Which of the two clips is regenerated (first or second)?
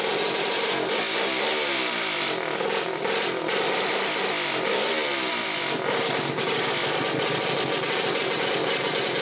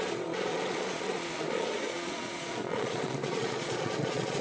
second